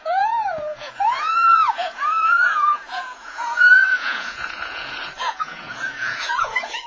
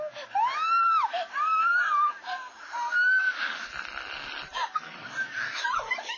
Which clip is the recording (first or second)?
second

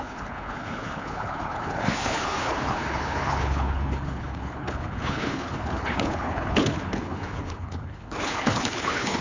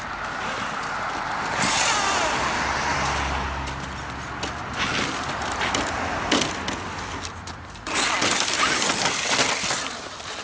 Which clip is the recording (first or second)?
second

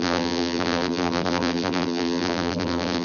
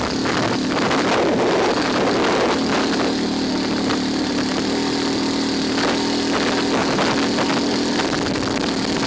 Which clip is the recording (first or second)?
second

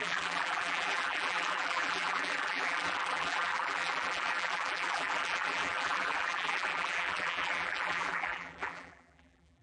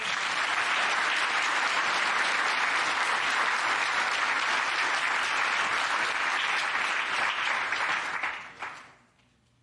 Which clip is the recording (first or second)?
second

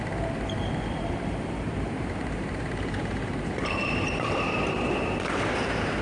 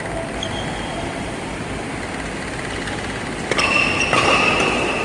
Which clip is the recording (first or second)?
second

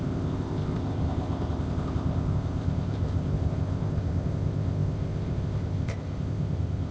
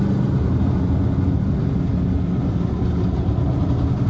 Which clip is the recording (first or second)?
second